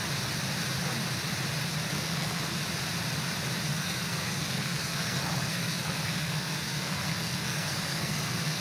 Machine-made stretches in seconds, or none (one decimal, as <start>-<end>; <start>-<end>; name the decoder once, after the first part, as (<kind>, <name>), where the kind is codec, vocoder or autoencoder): 1.9-2.6 (codec, SNAC); 3.7-8.6